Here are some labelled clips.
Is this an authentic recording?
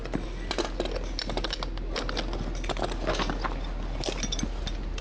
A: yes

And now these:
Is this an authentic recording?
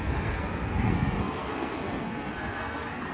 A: no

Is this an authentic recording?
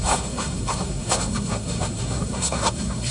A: no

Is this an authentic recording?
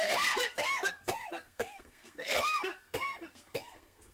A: no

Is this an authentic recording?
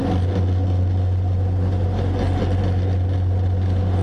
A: yes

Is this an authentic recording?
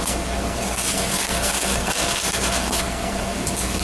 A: no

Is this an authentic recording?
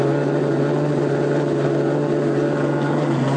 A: yes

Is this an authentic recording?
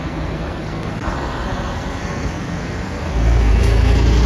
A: no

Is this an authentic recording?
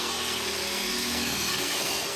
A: no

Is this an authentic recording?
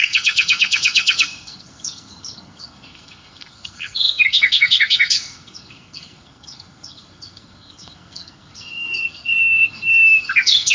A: no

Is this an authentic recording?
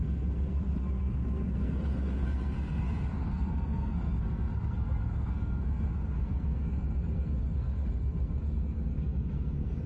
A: no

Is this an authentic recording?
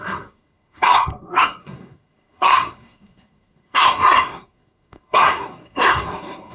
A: no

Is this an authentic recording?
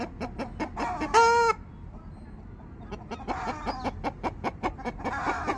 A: yes